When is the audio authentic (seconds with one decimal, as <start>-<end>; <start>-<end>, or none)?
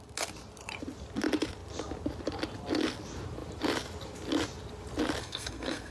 0.0-5.2